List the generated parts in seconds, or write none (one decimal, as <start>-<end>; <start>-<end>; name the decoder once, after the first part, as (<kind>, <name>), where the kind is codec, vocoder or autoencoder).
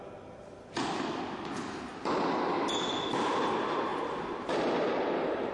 none